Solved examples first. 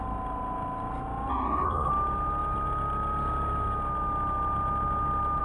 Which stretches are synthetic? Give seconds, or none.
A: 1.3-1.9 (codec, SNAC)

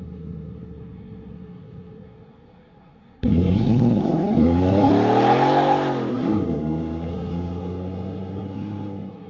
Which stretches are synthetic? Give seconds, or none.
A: 0.0-4.9 (codec, SNAC); 6.1-9.3

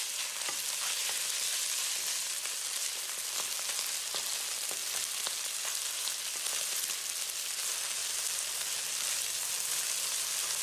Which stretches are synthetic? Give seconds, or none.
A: none

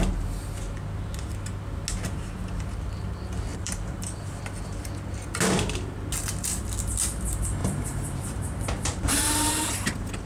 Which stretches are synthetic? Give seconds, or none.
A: 3.5-4.4 (vocoder, BigVGAN v2); 7.6-9.5

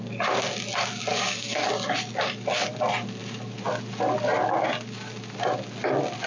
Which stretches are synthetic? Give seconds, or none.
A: 1.1-1.7 (codec, SNAC)

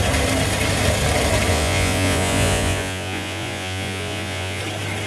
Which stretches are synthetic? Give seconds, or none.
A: 1.5-4.6 (vocoder, Vocos)